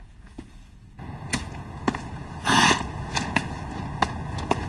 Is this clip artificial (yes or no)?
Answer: yes